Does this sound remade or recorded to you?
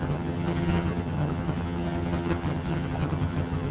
remade